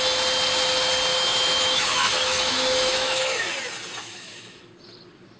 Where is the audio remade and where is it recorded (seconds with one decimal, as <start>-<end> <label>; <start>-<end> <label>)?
0.0-1.1 recorded; 1.1-3.5 remade; 3.5-4.0 recorded; 4.0-4.6 remade; 4.6-5.4 recorded